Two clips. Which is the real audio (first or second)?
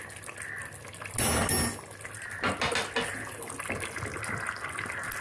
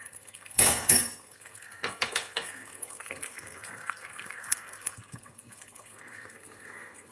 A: first